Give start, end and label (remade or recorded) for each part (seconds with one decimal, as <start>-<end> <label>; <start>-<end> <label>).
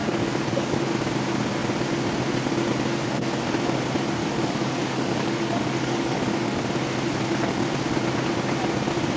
0.0-0.8 remade; 0.8-4.2 recorded; 4.2-6.6 remade; 6.6-9.2 recorded